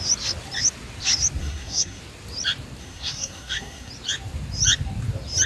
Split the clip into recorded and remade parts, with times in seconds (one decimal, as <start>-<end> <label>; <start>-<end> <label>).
0.0-1.4 recorded; 1.4-2.0 remade; 2.0-2.8 recorded; 2.8-3.9 remade; 3.9-5.5 recorded